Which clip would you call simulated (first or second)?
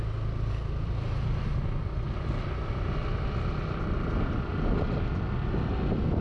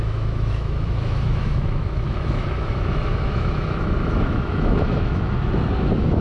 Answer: second